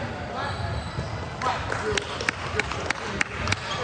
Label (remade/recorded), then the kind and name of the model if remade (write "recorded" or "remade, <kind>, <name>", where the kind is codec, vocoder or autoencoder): recorded